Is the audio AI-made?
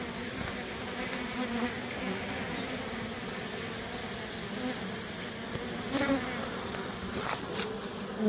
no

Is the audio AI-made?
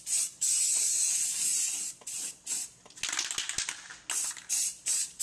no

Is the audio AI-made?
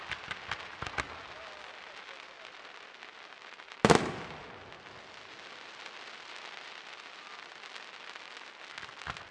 no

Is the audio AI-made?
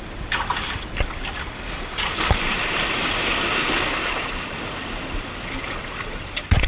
no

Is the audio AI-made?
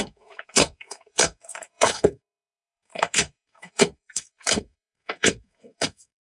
yes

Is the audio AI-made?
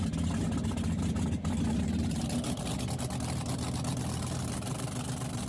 no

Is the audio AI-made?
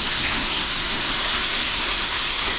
yes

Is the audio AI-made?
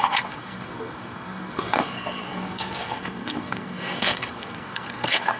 yes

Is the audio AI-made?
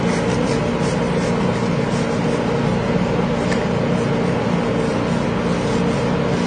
no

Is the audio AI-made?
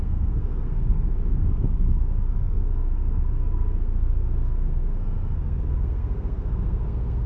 yes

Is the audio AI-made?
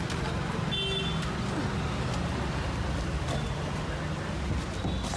no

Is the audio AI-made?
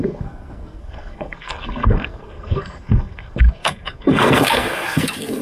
yes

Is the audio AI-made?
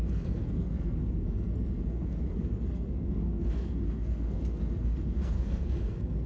yes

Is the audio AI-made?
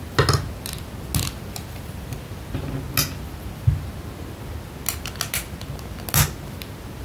no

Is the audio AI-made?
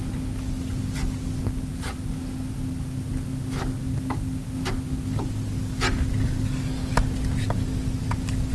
no